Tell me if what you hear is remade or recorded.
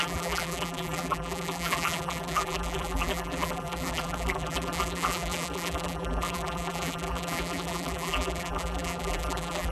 remade